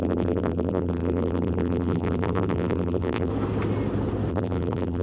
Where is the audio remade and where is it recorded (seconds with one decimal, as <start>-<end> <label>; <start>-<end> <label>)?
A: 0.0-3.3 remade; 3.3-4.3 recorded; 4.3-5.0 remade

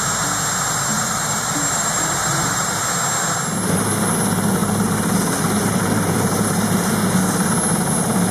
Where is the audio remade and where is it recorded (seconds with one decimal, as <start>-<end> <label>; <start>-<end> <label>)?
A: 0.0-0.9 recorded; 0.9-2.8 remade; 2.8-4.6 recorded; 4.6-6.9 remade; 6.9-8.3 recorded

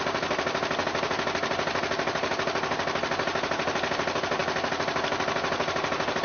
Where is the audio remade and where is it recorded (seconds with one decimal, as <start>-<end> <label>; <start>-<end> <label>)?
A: 0.0-6.2 recorded